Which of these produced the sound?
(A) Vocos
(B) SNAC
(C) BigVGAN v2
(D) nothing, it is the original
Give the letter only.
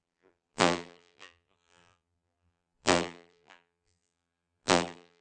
C